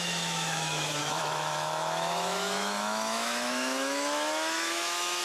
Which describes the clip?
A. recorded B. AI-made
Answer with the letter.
B